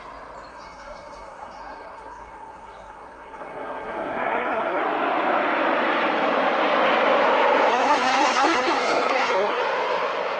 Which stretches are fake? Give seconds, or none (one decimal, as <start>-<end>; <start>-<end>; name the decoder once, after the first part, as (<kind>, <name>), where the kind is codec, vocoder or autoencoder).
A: 0.5-4.8 (codec, SNAC); 7.7-9.6